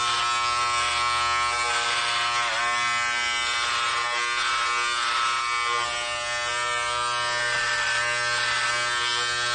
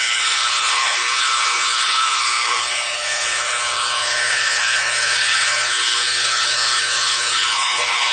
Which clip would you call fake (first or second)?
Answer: second